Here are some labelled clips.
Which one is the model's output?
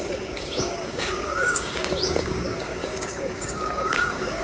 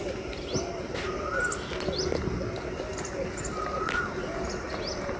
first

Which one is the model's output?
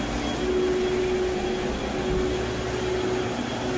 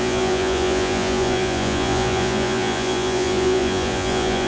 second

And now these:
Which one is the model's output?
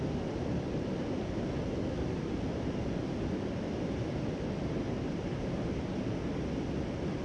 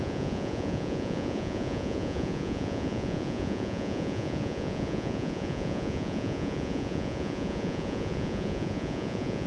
second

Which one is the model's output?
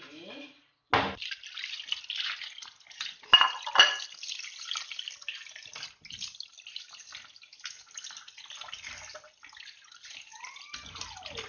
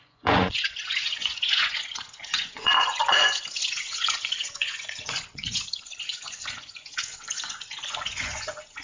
second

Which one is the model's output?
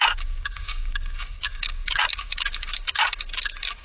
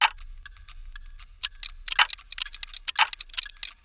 first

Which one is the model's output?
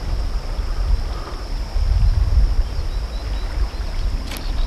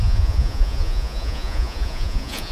second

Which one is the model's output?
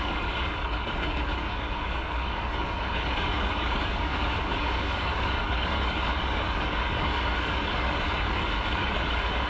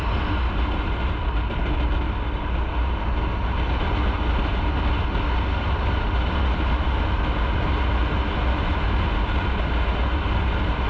first